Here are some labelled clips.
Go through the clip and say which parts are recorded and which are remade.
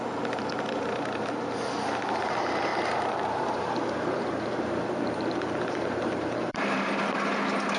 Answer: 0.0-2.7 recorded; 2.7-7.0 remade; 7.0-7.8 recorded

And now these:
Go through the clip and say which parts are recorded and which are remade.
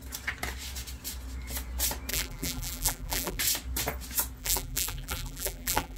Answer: 0.0-2.1 recorded; 2.1-3.4 remade; 3.4-4.4 recorded; 4.4-6.0 remade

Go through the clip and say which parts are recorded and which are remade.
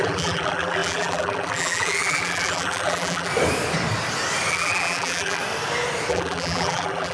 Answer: 0.0-3.3 remade; 3.3-4.5 recorded; 4.5-5.4 remade; 5.4-6.1 recorded; 6.1-7.1 remade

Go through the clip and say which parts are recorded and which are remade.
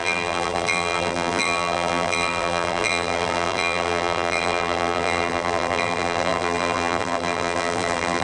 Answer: 0.0-8.2 remade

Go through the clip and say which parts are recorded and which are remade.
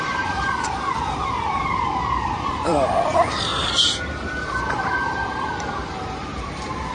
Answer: 0.0-3.5 remade; 3.5-4.4 recorded; 4.4-6.9 remade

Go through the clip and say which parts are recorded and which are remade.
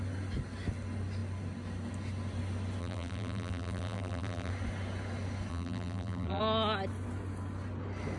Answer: 0.0-2.8 recorded; 2.8-4.5 remade; 4.5-5.5 recorded; 5.5-6.4 remade; 6.4-8.2 recorded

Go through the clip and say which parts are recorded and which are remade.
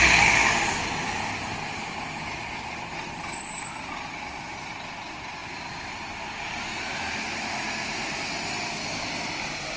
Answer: 0.0-5.4 recorded; 5.4-6.7 remade; 6.7-9.8 recorded